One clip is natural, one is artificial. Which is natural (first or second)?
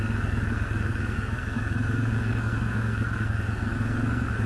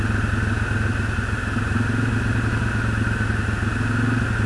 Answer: second